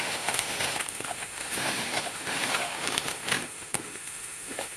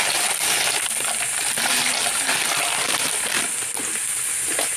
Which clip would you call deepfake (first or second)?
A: first